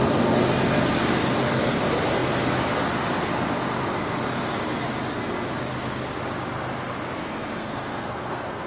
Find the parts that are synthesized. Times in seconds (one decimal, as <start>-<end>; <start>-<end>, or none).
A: 7.2-8.7